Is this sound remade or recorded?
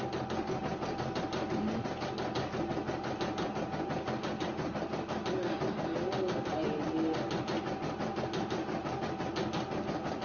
recorded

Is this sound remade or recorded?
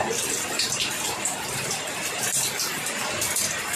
recorded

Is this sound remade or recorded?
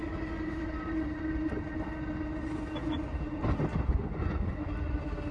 recorded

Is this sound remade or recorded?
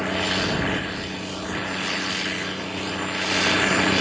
recorded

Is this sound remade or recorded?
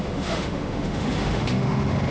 remade